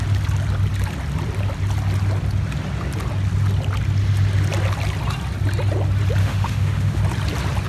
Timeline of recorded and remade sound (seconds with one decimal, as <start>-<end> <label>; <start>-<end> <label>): 0.0-6.2 recorded; 6.2-7.0 remade; 7.0-7.7 recorded